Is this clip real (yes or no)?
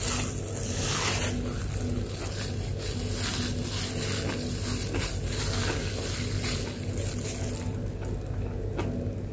yes